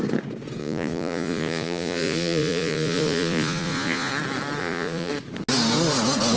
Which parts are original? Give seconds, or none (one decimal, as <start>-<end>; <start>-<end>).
0.0-0.6; 4.1-4.6; 5.1-6.4